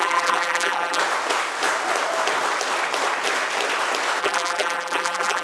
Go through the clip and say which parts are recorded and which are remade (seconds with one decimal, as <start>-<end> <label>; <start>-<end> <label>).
0.0-1.0 remade; 1.0-4.2 recorded; 4.2-5.4 remade